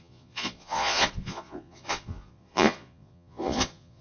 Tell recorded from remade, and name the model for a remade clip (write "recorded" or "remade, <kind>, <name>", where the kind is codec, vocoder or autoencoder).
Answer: remade, vocoder, Vocos